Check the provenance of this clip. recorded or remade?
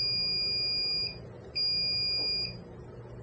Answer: recorded